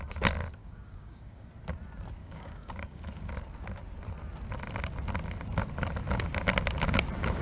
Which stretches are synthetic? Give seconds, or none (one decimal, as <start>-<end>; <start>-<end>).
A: 0.6-1.5; 2.2-3.3